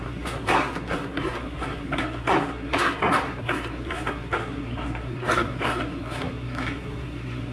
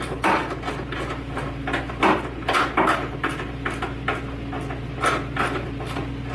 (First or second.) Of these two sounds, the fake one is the first